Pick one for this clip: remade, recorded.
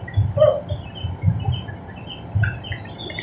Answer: recorded